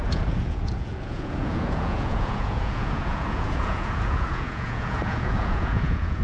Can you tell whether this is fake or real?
fake